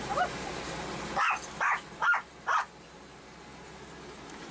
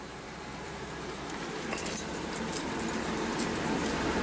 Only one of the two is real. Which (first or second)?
first